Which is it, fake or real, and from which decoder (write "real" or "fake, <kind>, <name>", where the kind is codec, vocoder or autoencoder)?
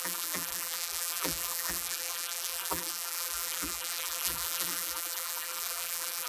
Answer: fake, vocoder, BigVGAN v2